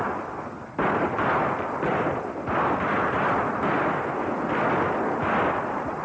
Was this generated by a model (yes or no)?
no